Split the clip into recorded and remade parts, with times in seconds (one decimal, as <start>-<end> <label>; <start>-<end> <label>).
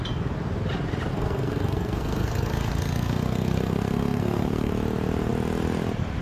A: 0.0-1.1 recorded; 1.1-4.7 remade; 4.7-6.2 recorded